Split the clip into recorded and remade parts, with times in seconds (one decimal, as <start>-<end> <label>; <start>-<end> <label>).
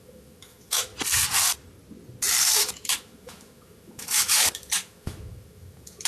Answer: 0.0-0.9 remade; 0.9-2.4 recorded; 2.4-6.1 remade